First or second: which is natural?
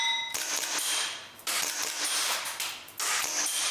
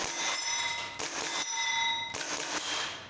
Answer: first